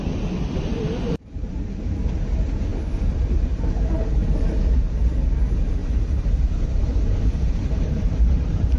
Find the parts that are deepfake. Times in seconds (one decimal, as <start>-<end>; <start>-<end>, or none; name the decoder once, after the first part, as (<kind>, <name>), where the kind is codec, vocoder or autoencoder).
0.7-1.6 (vocoder, BigVGAN v2); 5.8-8.8